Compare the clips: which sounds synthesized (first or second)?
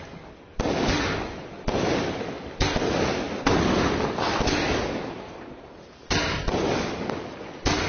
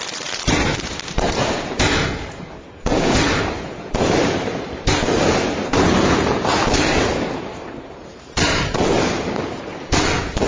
second